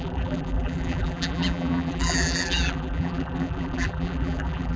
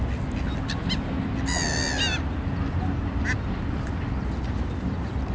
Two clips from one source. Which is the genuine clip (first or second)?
second